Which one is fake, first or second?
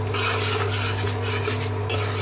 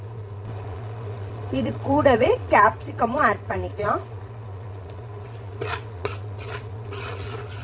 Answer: second